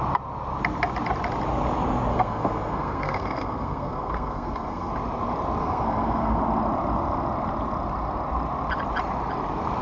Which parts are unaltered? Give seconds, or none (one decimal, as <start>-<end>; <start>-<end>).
0.0-2.1; 4.9-5.6; 6.4-9.8

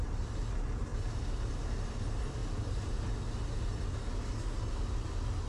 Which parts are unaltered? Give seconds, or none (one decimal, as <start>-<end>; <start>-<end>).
0.0-5.5

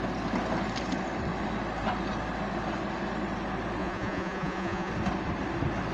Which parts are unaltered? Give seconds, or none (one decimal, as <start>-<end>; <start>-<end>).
0.0-3.8; 4.9-5.9

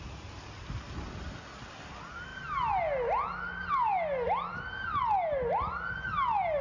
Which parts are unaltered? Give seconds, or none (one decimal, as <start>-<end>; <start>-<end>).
0.0-6.6

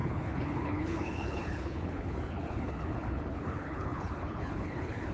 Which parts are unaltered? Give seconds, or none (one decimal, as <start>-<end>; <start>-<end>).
none

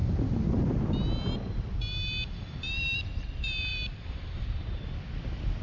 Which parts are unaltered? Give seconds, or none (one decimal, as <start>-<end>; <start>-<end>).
0.0-2.6

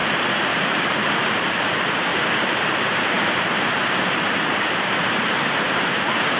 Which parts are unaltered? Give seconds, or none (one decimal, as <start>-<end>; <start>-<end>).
2.1-4.3